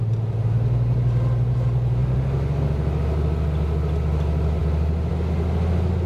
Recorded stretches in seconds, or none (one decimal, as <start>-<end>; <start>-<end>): 0.0-6.1